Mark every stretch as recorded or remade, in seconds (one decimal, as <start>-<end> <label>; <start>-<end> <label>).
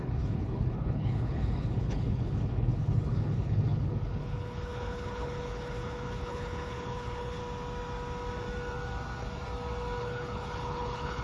0.0-7.4 remade; 7.4-10.0 recorded; 10.0-11.2 remade